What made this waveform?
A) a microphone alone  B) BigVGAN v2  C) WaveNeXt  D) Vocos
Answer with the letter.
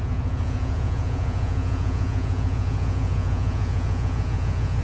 D